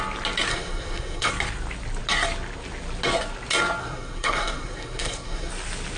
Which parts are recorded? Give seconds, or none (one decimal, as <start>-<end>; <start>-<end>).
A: 0.0-0.5; 1.3-3.8; 5.5-6.0